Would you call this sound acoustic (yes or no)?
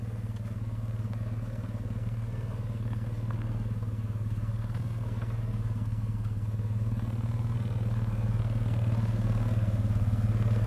no